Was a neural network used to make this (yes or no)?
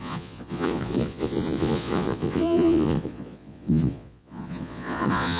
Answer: yes